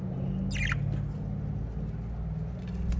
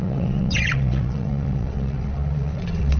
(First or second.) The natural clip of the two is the first